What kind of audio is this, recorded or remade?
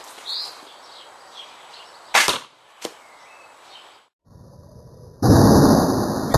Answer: recorded